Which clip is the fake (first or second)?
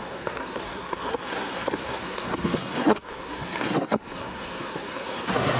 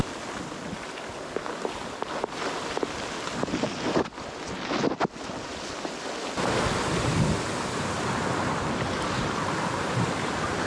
first